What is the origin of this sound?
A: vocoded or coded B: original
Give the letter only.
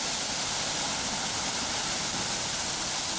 A